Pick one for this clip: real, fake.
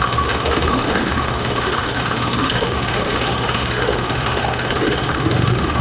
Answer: fake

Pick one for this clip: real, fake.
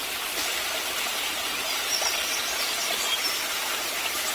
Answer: real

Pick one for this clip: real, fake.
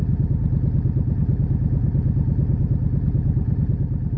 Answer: real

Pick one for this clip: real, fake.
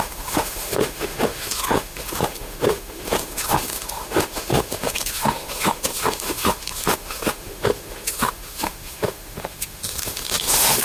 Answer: fake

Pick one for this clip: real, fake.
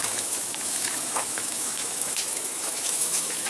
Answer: fake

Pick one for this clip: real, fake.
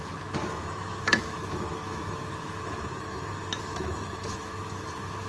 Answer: fake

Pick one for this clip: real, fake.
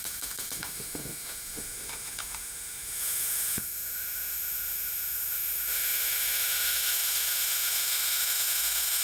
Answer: fake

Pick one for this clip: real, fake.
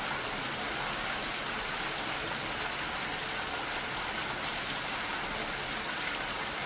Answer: real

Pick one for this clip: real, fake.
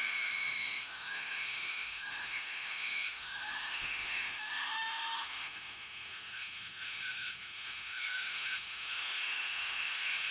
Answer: fake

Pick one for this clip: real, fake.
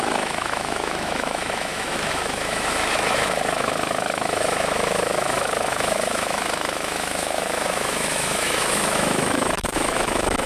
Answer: fake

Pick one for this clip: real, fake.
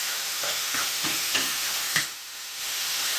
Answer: fake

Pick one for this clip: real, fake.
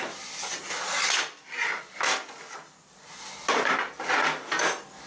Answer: real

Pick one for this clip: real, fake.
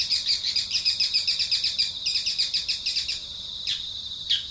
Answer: real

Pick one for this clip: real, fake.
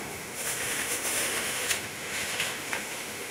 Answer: fake